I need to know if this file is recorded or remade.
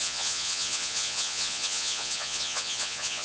remade